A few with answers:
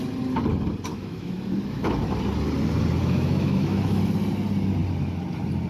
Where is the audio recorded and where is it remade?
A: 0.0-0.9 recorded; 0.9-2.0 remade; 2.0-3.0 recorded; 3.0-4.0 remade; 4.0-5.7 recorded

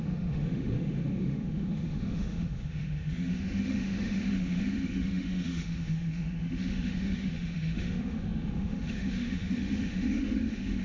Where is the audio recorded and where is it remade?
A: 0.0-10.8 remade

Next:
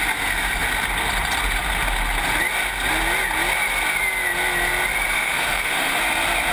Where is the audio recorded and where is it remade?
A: 0.0-5.1 recorded; 5.1-6.0 remade; 6.0-6.5 recorded

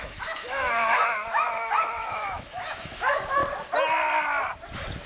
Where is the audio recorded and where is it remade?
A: 0.0-3.4 remade; 3.4-5.1 recorded